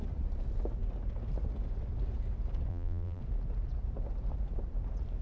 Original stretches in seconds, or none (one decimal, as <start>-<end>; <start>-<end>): 0.0-2.7; 3.2-5.2